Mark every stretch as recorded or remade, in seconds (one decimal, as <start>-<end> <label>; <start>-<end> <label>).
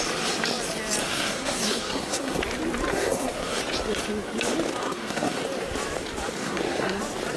0.0-1.0 recorded; 1.0-2.4 remade; 2.4-2.9 recorded; 2.9-3.6 remade; 3.6-4.8 recorded; 4.8-5.4 remade; 5.4-6.4 recorded; 6.4-7.0 remade; 7.0-7.4 recorded